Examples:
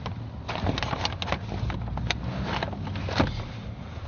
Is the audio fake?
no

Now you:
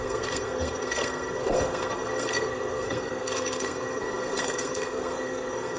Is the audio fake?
yes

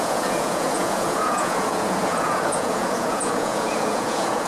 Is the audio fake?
yes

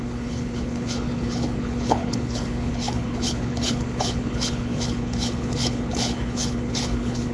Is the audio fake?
yes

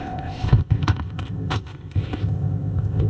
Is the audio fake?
yes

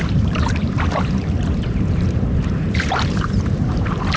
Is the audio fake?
yes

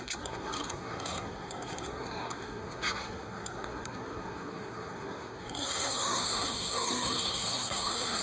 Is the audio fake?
yes